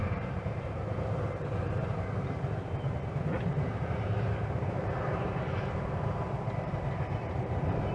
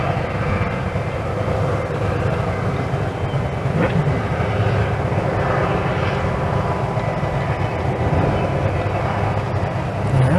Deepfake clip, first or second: first